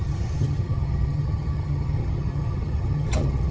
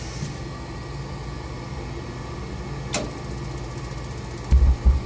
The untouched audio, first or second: second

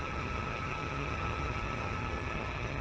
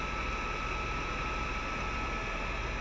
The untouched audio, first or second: second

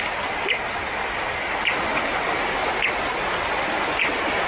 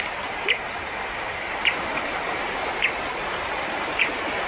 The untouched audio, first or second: first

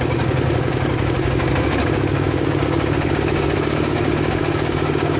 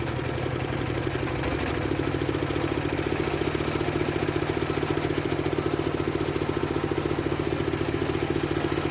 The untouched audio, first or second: second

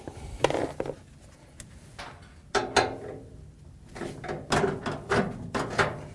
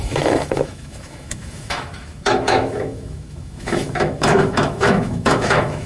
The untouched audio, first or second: first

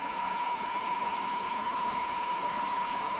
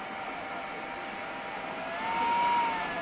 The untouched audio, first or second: second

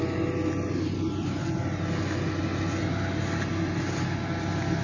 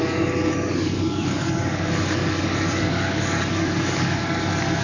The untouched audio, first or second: first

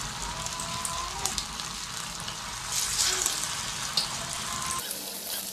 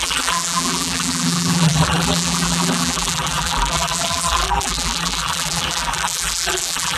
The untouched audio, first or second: first